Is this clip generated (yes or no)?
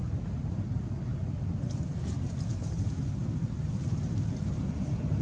no